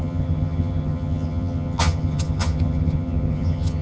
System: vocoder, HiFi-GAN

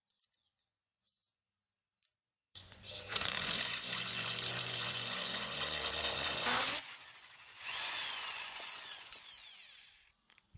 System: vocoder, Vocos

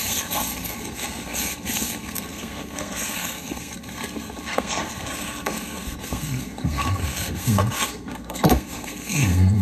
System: codec, SNAC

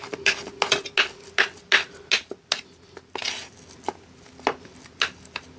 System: none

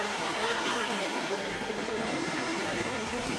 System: codec, SNAC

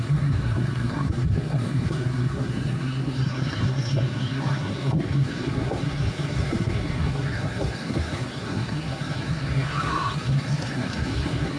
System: codec, SNAC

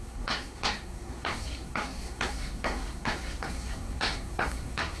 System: codec, SNAC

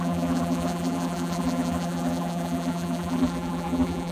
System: vocoder, BigVGAN v2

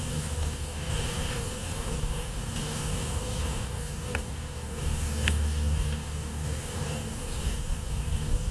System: codec, DAC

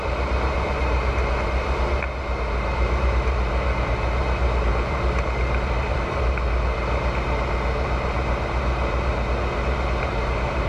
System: vocoder, BigVGAN v2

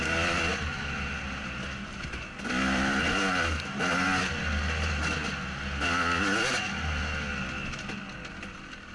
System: none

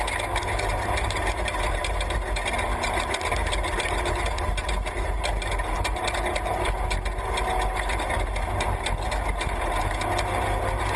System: none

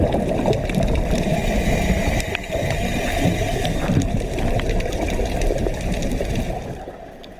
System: none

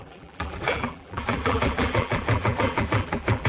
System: vocoder, BigVGAN v2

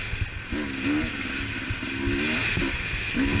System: none